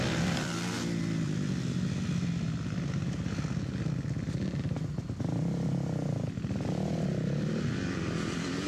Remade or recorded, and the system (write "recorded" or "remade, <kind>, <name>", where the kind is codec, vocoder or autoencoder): recorded